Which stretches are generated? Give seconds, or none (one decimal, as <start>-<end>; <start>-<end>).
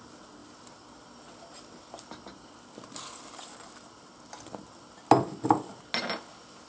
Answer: none